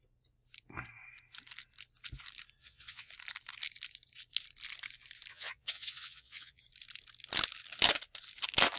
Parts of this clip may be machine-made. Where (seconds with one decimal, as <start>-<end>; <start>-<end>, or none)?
2.6-3.1; 5.3-6.6